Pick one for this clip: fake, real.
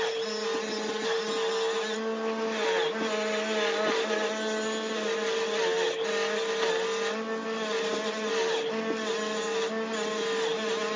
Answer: real